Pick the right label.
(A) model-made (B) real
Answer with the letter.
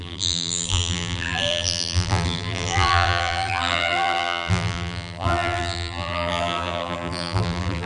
A